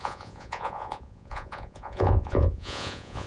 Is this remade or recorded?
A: remade